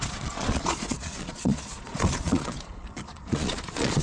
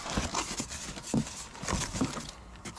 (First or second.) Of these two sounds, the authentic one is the second